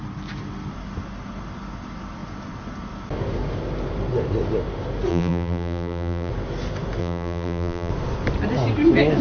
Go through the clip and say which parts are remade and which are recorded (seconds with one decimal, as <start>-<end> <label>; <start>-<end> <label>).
0.0-5.1 recorded; 5.1-6.3 remade; 6.3-7.0 recorded; 7.0-7.9 remade; 7.9-9.2 recorded